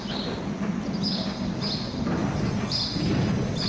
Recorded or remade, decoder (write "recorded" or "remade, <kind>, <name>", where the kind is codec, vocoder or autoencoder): recorded